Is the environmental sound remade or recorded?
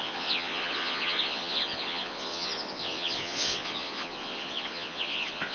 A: remade